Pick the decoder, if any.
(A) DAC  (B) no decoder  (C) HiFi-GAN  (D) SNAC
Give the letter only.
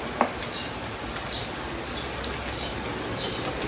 B